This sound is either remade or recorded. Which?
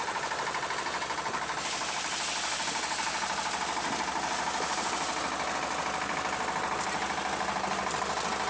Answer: recorded